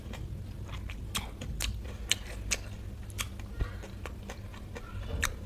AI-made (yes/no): no